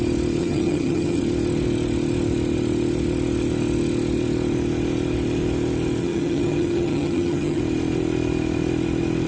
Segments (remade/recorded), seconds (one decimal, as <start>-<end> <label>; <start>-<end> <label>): 0.0-0.4 recorded; 0.4-1.2 remade; 1.2-6.0 recorded; 6.0-7.6 remade; 7.6-9.3 recorded